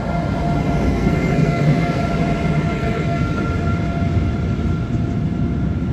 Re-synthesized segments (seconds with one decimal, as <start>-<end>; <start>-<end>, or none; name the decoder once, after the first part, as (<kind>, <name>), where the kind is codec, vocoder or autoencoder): 0.9-2.0 (codec, SNAC); 2.7-3.4